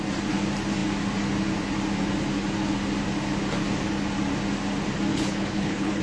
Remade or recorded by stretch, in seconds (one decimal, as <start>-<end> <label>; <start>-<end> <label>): 0.0-5.1 recorded; 5.1-6.0 remade